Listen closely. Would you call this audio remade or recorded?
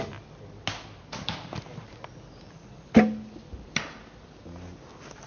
recorded